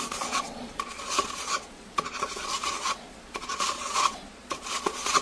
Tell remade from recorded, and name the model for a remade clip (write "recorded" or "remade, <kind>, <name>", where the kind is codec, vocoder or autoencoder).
remade, vocoder, Vocos